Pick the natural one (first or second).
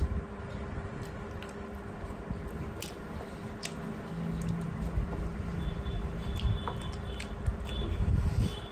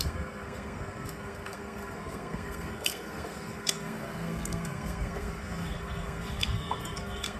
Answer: first